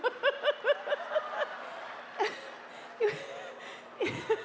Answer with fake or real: real